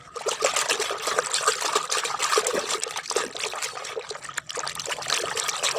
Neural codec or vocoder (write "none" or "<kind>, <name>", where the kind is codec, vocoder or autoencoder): none